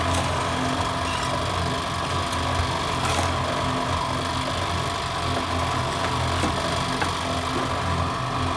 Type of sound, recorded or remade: recorded